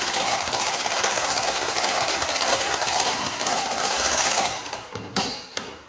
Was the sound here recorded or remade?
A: remade